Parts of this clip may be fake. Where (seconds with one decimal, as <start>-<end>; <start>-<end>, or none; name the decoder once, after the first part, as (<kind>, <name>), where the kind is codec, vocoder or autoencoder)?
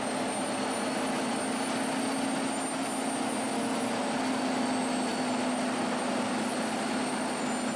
none